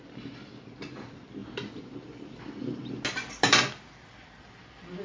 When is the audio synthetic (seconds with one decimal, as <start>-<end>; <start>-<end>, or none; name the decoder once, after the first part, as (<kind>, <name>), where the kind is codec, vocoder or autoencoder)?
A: none